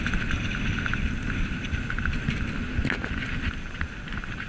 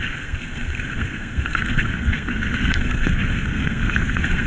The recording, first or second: first